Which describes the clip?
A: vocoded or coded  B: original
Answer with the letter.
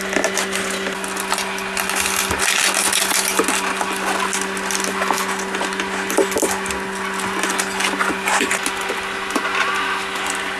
B